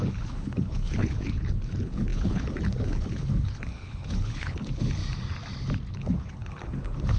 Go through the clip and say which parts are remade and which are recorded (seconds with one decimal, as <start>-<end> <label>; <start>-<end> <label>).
0.0-5.0 remade; 5.0-5.9 recorded; 5.9-7.2 remade